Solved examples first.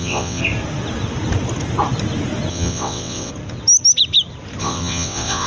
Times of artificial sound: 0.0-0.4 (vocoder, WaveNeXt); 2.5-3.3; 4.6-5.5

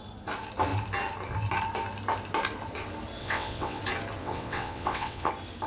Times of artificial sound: 3.2-3.8 (vocoder, WaveNeXt); 4.2-5.3

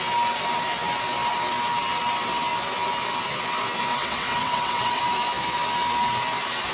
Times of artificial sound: 3.9-5.0 (vocoder, WaveNeXt)